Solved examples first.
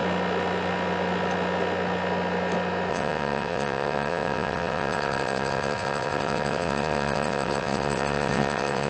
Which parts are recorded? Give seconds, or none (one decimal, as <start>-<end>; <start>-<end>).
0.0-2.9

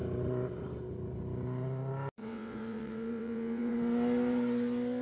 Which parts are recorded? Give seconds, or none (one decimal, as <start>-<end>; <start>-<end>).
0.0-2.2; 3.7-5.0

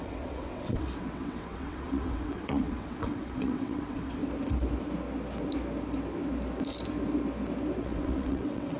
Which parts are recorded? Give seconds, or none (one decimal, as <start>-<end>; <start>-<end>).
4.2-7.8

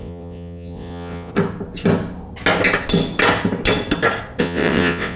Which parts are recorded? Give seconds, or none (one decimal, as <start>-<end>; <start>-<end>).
1.3-4.4

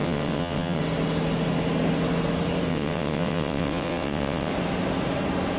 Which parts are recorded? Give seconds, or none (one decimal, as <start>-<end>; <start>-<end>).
0.8-2.7; 4.5-5.6

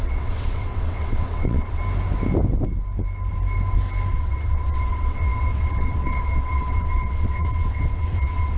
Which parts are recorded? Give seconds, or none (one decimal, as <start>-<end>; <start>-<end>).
1.8-4.1